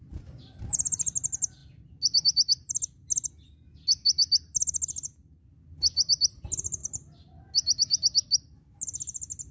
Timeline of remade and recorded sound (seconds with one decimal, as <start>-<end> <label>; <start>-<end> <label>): 0.0-9.5 recorded